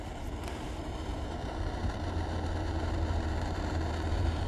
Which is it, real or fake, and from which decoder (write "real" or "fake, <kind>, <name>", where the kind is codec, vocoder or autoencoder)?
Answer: fake, vocoder, BigVGAN v2